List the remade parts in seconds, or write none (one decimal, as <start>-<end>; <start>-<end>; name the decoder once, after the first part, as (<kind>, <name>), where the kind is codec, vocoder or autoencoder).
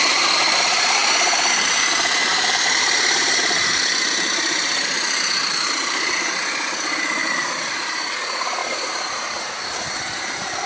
0.0-10.7 (vocoder, BigVGAN v2)